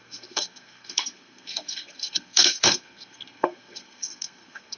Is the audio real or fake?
fake